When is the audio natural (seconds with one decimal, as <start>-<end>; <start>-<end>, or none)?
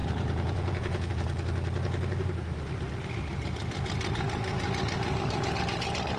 1.1-6.2